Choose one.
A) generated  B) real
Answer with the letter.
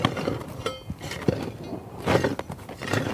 B